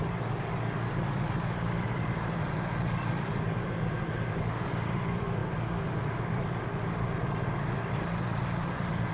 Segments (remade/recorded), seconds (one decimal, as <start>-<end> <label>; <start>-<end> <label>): 0.0-9.1 recorded